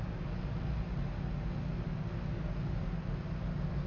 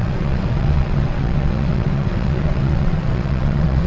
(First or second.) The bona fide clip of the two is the first